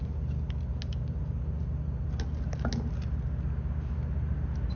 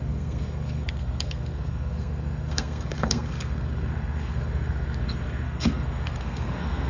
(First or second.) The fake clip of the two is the second